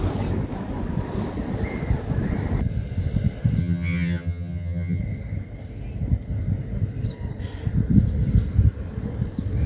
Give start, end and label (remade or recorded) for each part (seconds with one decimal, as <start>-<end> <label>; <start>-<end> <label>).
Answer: 0.0-3.6 recorded; 3.6-5.0 remade; 5.0-9.7 recorded